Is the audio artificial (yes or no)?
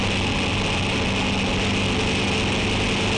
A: no